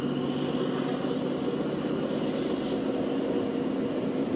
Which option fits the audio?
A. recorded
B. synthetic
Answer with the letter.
A